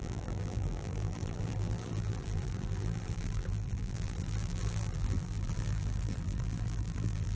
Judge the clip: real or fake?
fake